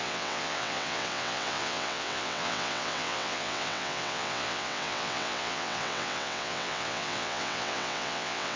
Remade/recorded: remade